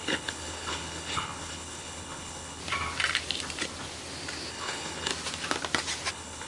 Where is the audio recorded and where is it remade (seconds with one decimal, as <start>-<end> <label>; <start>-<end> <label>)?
0.0-2.6 remade; 2.6-4.5 recorded; 4.5-5.1 remade; 5.1-6.1 recorded; 6.1-6.5 remade